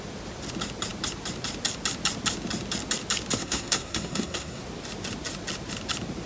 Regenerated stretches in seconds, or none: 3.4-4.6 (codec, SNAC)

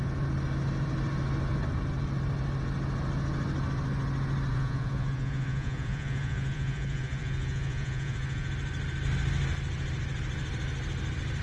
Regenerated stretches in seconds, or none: 4.5-8.5 (vocoder, Vocos)

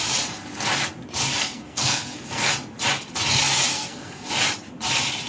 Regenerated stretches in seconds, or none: 1.4-2.5 (codec, SNAC); 3.7-4.3

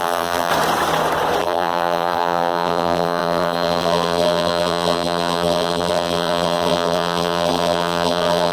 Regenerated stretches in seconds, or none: 0.0-0.5 (vocoder, BigVGAN v2); 1.4-8.5

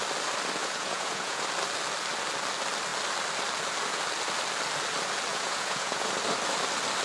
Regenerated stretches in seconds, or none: 0.6-1.4 (vocoder, Vocos); 5.3-6.1

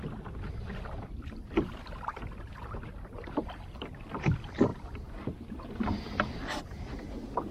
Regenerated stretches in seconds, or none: none

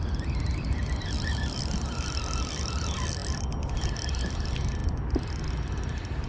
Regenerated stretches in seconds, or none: none

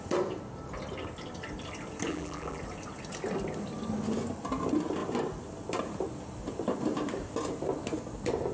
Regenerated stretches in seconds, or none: 2.1-2.6 (vocoder, BigVGAN v2)